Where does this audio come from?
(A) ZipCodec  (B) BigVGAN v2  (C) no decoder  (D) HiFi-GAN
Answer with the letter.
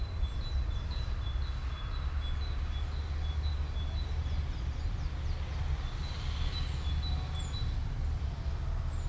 C